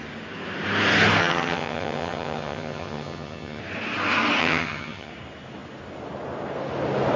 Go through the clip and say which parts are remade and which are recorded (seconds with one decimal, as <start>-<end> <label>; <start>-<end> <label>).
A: 0.0-1.2 recorded; 1.2-3.6 remade; 3.6-4.4 recorded; 4.4-5.1 remade; 5.1-7.2 recorded